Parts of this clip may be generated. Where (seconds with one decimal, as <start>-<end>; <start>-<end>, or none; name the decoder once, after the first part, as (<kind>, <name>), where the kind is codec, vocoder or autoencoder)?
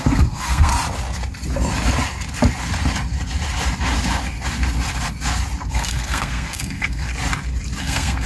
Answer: 0.0-0.7 (codec, SNAC); 5.7-7.1; 7.8-8.3